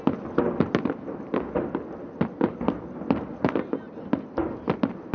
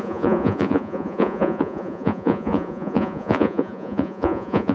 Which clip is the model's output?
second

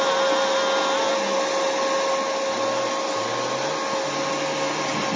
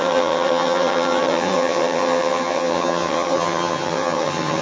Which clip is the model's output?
second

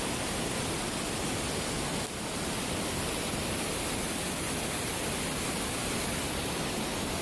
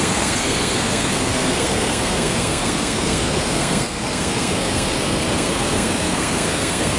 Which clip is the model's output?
second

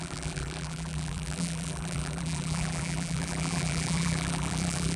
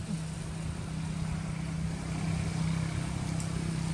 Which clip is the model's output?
first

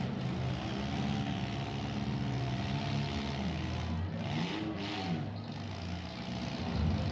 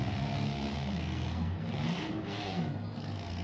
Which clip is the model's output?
second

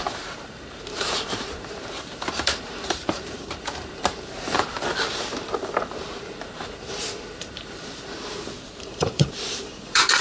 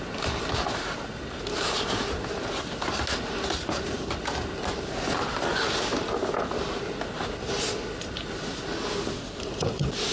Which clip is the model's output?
first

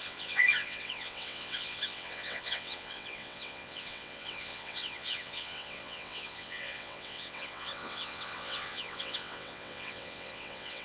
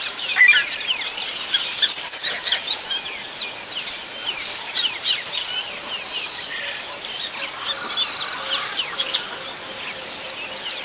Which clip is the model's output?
first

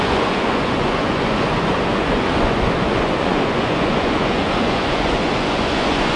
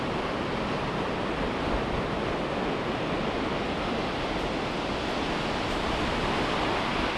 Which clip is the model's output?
first